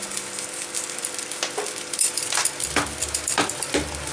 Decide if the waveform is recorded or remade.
remade